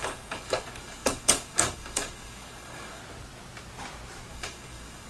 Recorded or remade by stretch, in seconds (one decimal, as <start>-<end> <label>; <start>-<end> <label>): 0.0-3.0 remade; 3.0-4.3 recorded; 4.3-5.1 remade